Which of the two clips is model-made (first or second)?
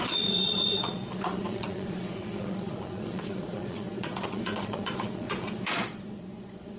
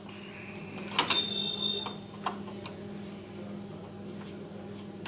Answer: first